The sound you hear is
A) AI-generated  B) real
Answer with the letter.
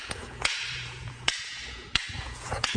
A